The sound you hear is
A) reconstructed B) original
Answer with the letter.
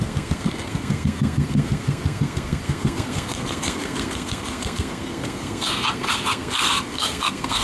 A